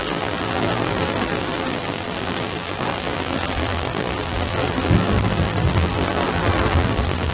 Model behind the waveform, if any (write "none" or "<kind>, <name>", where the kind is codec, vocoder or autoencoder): vocoder, BigVGAN v2